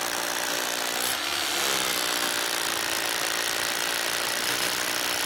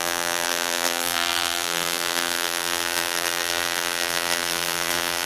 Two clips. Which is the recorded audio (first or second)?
first